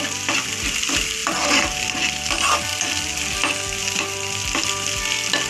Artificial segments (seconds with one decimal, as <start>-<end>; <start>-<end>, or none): none